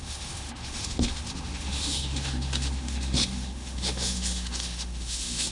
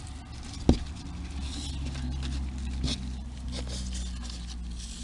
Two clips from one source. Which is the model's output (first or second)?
first